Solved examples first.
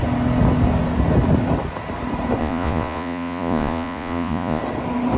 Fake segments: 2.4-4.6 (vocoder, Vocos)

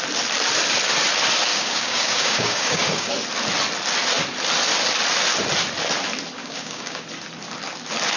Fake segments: 1.5-3.1 (codec, DAC); 6.4-7.0

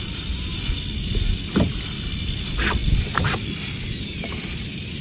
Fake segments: none